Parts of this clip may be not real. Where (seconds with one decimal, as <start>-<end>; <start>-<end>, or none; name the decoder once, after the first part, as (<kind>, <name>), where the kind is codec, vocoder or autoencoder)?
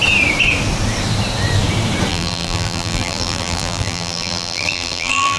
2.1-5.4 (vocoder, BigVGAN v2)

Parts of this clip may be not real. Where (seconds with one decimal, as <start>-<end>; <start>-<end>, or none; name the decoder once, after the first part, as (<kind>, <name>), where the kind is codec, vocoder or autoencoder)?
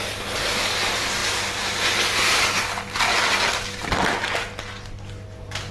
none